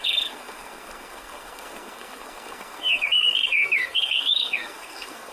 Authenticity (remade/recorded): remade